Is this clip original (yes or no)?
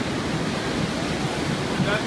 yes